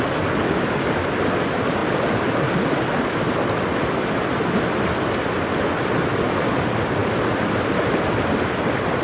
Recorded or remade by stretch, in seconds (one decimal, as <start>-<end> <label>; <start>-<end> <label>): 0.0-9.0 recorded